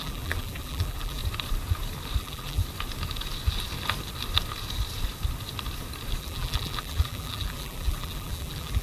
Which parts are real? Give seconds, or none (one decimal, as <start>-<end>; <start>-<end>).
1.2-2.2; 2.6-6.2

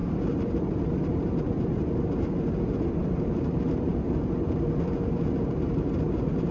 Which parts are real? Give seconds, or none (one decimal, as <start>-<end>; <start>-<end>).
2.5-3.0; 3.9-5.0

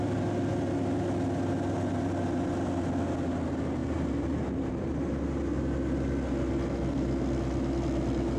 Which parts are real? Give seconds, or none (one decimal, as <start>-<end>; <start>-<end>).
0.0-3.8; 5.1-8.4

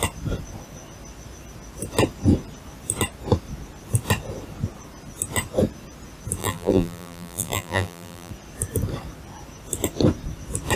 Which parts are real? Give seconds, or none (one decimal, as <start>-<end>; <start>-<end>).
0.0-6.4; 8.3-10.8

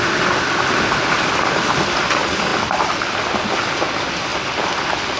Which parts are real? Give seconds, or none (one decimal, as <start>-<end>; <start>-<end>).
0.0-5.2

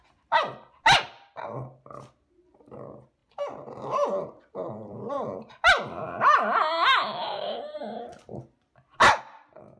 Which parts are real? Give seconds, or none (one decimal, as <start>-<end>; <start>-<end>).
0.0-3.2; 5.5-7.2; 8.4-9.8